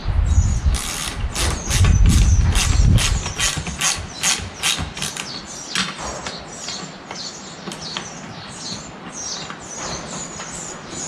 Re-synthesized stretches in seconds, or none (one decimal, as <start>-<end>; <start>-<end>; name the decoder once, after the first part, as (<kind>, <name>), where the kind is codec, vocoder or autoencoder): none